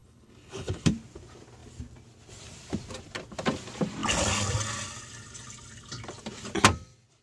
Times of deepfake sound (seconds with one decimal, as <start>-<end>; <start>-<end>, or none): 0.0-0.9